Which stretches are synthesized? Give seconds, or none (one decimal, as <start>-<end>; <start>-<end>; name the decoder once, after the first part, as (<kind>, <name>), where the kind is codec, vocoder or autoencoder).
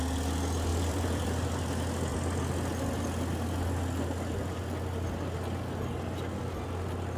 0.7-1.4 (vocoder, BigVGAN v2)